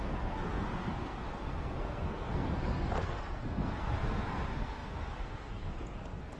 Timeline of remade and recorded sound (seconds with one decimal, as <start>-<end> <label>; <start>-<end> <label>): 0.0-6.4 remade

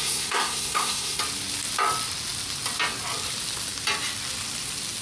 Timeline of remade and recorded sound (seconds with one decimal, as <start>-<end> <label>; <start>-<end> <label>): 0.0-1.2 remade; 1.2-5.0 recorded

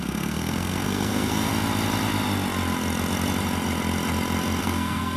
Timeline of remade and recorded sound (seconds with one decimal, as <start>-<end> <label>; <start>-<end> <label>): 0.0-1.5 remade; 1.5-4.6 recorded; 4.6-5.2 remade

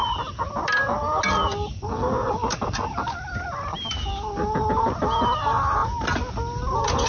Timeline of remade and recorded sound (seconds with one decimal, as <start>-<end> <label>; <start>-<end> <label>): 0.0-7.1 recorded

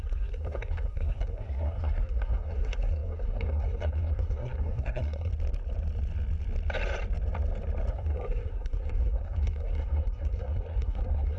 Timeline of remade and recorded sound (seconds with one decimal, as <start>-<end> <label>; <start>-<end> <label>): 0.0-5.3 remade; 5.3-7.9 recorded; 7.9-11.4 remade

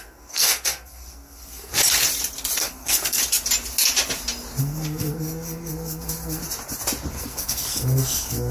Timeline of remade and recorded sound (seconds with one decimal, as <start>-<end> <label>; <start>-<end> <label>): 0.0-1.7 remade; 1.7-2.6 recorded; 2.6-3.2 remade; 3.2-4.6 recorded; 4.6-6.4 remade; 6.4-7.1 recorded; 7.1-8.5 remade

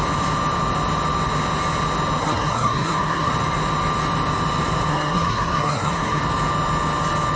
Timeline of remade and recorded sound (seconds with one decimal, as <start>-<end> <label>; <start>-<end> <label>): 0.0-2.2 recorded; 2.2-3.3 remade; 3.3-4.9 recorded; 4.9-6.2 remade; 6.2-7.4 recorded

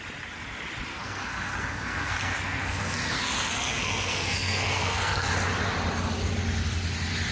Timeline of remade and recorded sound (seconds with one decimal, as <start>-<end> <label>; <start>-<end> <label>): 0.0-0.9 recorded; 0.9-5.3 remade; 5.3-7.3 recorded